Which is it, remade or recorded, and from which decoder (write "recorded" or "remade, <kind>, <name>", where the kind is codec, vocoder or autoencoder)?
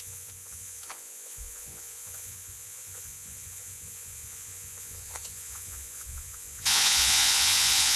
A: remade, vocoder, Vocos